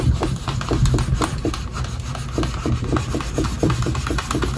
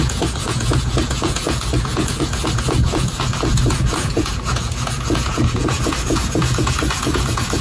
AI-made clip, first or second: second